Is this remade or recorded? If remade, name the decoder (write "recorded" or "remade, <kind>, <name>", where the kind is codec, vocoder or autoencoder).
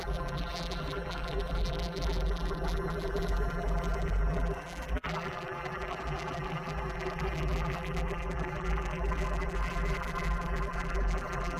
remade, vocoder, BigVGAN v2